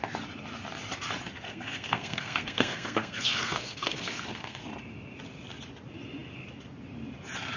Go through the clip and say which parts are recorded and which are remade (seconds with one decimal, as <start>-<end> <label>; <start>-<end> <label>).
0.0-1.5 recorded; 1.5-4.6 remade; 4.6-7.6 recorded